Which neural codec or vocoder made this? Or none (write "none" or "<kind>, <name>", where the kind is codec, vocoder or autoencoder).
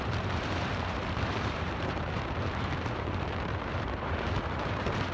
vocoder, BigVGAN v2